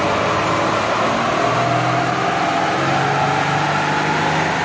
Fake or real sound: real